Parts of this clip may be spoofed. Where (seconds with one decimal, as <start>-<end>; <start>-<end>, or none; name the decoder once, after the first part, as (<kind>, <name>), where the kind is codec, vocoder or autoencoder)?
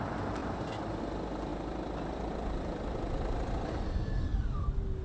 0.4-1.0 (vocoder, BigVGAN v2); 1.5-3.7